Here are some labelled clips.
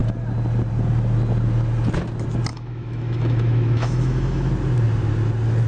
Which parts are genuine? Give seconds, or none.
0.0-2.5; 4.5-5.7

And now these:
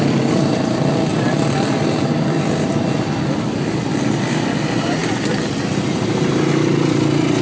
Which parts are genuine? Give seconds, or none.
0.0-1.1; 3.9-5.0; 5.8-7.4

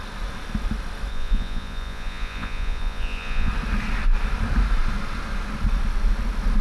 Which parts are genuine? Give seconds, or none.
0.0-1.1; 3.5-6.6

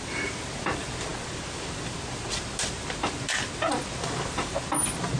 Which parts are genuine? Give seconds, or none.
0.0-5.2